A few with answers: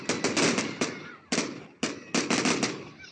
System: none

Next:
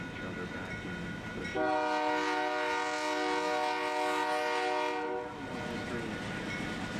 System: none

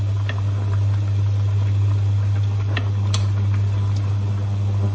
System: none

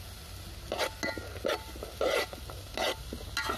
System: none